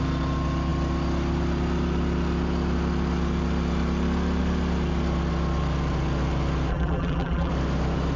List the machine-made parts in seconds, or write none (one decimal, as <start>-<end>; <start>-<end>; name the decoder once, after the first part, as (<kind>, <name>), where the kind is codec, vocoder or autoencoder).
6.7-7.5 (vocoder, BigVGAN v2)